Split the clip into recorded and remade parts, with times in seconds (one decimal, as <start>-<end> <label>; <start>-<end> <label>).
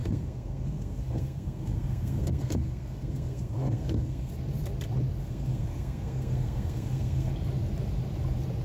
0.0-4.3 remade; 4.3-5.2 recorded; 5.2-7.3 remade; 7.3-8.6 recorded